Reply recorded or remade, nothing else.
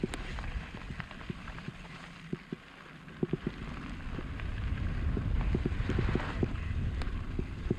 remade